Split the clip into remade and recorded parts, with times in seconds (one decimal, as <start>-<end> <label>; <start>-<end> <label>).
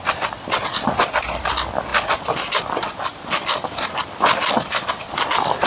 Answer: 0.0-5.7 remade